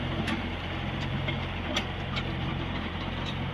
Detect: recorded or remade remade